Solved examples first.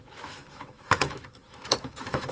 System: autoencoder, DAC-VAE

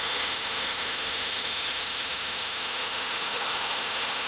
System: autoencoder, DAC-VAE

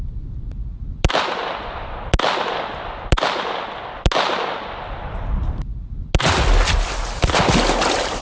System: none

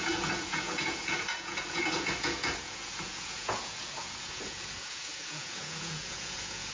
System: vocoder, Vocos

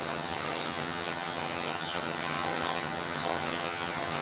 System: vocoder, HiFi-GAN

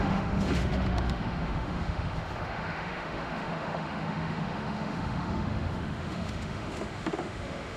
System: autoencoder, DAC-VAE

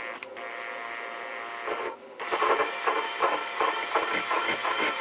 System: none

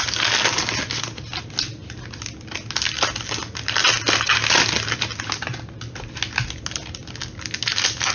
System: none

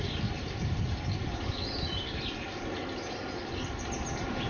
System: none